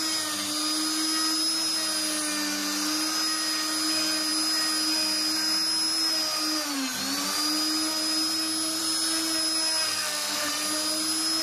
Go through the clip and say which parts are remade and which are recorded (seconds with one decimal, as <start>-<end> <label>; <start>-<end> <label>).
0.0-9.9 recorded; 9.9-10.5 remade; 10.5-11.4 recorded